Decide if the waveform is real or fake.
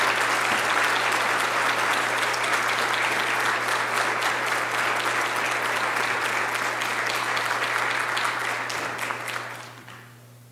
real